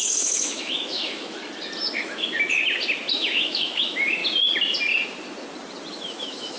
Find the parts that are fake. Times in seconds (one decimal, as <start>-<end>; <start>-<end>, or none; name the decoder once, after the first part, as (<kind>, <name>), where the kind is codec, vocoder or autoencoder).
0.0-1.4 (autoencoder, DAC-VAE); 1.9-2.3; 3.1-4.2; 5.9-6.6